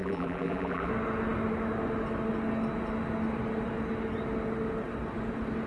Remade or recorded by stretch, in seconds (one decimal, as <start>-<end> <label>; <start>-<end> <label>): 0.0-0.9 remade; 0.9-5.7 recorded